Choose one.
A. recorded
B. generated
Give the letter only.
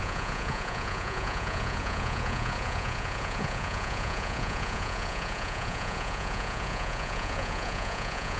B